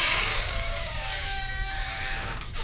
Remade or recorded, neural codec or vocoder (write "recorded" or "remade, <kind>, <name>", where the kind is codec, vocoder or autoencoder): remade, codec, DAC